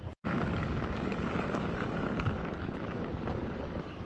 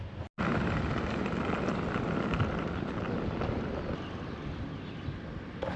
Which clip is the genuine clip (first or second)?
second